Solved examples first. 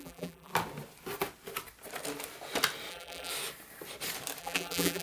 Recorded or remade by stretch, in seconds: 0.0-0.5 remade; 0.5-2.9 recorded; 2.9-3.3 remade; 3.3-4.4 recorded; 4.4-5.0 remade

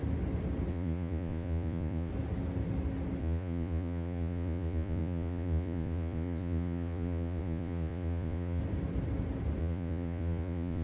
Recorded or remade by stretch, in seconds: 0.0-0.7 recorded; 0.7-2.1 remade; 2.1-3.2 recorded; 3.2-8.6 remade; 8.6-9.6 recorded; 9.6-10.8 remade

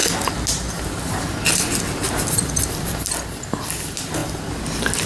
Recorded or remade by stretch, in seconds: 0.0-5.1 recorded